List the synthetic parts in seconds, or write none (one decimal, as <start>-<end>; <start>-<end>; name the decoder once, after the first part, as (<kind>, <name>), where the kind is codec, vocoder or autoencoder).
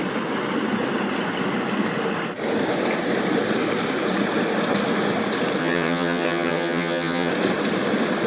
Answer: 5.6-7.3 (vocoder, HiFi-GAN)